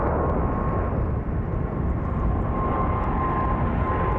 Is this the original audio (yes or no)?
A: yes